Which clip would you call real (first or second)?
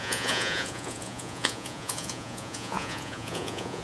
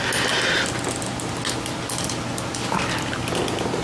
second